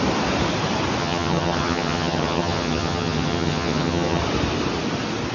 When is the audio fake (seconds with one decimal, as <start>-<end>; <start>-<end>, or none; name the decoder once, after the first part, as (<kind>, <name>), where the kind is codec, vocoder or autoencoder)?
1.0-4.2 (vocoder, HiFi-GAN)